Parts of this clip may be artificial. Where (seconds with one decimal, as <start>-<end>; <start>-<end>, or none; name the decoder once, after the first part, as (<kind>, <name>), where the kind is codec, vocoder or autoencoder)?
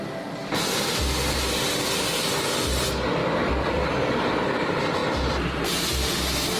0.4-1.4 (vocoder, BigVGAN v2); 3.2-4.3